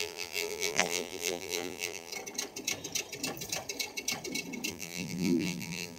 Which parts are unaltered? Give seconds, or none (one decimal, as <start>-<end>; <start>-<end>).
2.1-4.7